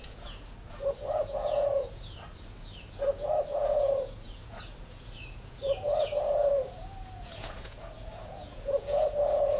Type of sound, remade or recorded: remade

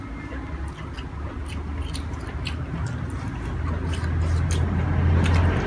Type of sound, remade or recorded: recorded